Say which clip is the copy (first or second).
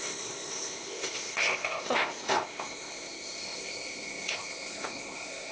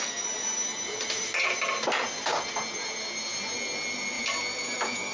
first